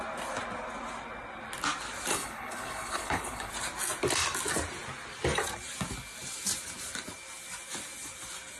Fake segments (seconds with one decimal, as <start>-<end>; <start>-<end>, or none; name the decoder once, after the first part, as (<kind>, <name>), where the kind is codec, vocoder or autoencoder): 2.1-3.5 (codec, HILCodec)